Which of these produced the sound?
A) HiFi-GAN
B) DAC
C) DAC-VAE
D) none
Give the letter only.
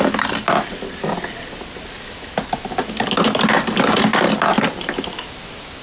D